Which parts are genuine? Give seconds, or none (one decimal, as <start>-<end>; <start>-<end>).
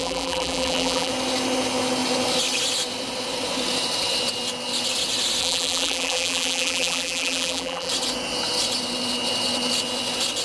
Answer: 1.1-5.4; 7.9-10.4